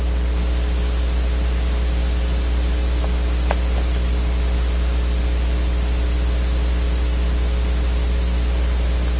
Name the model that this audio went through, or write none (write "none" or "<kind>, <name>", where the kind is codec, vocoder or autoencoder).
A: none